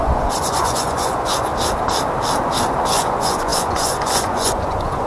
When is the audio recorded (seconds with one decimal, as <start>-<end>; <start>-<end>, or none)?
1.5-2.9